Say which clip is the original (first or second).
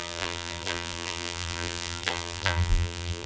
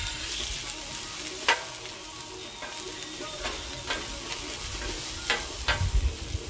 second